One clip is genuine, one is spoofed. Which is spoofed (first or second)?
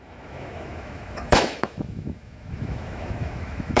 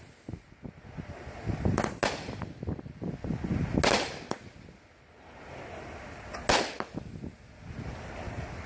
first